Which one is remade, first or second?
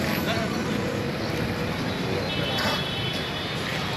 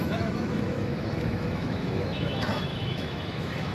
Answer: second